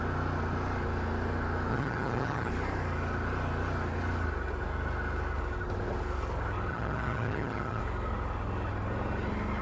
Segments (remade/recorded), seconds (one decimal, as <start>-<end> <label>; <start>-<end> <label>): 0.0-1.7 recorded; 1.7-2.5 remade; 2.5-6.7 recorded; 6.7-7.8 remade; 7.8-9.6 recorded